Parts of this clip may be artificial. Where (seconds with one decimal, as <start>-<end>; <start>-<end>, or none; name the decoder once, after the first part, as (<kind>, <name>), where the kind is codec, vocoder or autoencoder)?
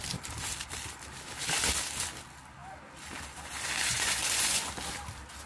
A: 3.9-4.7 (vocoder, Vocos)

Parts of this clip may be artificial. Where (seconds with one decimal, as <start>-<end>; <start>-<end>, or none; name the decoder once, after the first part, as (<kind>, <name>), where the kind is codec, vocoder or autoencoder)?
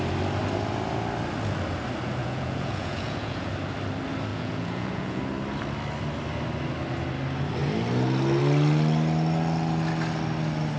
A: 2.2-3.5 (vocoder, Vocos); 4.3-5.2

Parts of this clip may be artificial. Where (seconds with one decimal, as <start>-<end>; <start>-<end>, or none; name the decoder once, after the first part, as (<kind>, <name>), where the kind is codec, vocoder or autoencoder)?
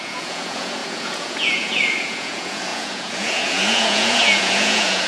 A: 0.0-5.1 (vocoder, Vocos)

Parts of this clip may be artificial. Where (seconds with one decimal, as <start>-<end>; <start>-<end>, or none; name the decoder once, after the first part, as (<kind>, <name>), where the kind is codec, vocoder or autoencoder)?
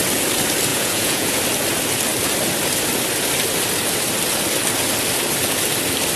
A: 0.7-1.4 (vocoder, Vocos)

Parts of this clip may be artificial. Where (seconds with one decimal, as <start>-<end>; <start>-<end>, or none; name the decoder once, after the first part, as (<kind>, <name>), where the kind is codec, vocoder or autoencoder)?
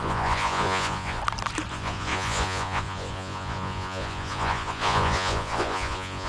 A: 0.0-1.2 (vocoder, Vocos); 1.7-6.3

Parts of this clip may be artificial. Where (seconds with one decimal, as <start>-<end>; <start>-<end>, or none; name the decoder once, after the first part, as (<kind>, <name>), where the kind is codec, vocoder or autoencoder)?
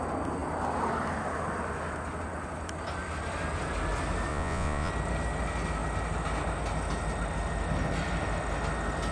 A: 4.3-4.9 (vocoder, Vocos)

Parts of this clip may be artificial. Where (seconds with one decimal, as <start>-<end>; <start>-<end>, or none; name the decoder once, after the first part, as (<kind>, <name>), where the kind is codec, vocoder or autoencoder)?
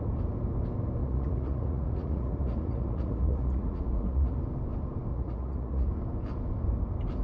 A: 1.0-4.4 (vocoder, Vocos); 5.1-5.9